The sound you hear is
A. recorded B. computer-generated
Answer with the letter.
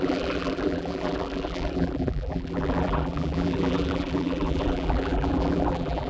B